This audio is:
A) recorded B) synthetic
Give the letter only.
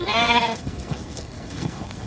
B